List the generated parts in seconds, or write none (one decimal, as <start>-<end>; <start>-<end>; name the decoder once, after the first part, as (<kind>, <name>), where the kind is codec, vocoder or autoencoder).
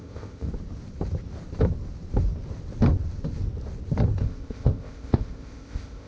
0.0-0.5 (codec, ZipCodec); 4.2-6.1